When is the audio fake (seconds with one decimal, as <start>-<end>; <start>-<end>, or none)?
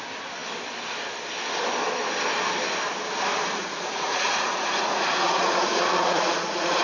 3.6-6.8